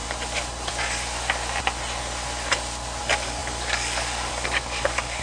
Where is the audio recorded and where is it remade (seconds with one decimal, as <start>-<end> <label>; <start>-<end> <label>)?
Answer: 0.0-3.0 recorded; 3.0-5.2 remade